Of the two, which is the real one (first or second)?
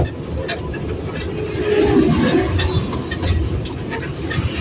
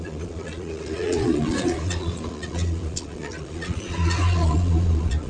first